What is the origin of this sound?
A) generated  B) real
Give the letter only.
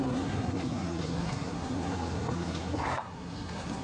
A